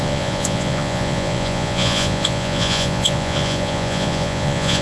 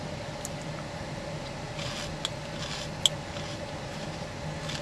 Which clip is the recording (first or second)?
second